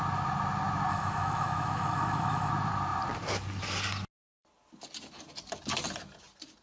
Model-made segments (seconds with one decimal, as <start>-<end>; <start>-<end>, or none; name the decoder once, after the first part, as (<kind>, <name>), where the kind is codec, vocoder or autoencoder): 0.9-2.5 (autoencoder, DAC-VAE)